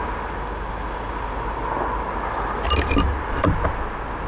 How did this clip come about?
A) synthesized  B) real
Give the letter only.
B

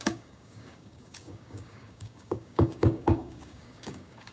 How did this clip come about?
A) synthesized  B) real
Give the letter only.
A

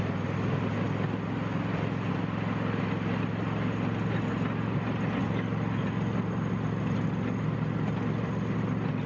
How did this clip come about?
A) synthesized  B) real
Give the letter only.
B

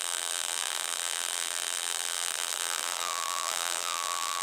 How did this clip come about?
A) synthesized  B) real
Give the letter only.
A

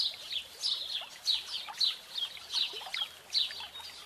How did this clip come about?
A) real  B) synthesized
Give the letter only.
A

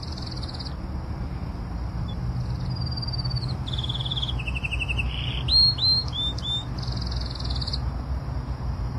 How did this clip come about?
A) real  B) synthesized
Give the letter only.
A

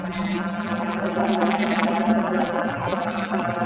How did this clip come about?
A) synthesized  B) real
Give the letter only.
A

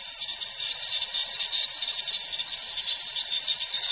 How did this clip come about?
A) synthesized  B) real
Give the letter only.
A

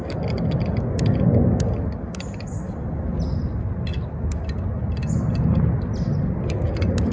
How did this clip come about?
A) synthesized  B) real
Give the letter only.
B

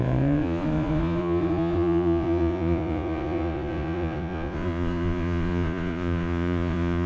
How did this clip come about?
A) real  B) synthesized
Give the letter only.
B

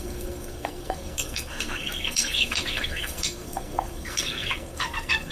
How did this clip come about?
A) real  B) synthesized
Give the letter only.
B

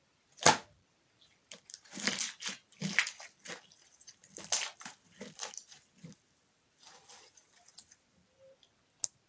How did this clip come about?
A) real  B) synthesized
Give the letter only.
A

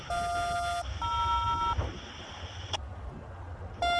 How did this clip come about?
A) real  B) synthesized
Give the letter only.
A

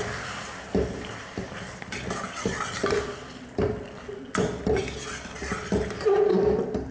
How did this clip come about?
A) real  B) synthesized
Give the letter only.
A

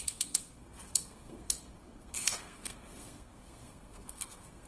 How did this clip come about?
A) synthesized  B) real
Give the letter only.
A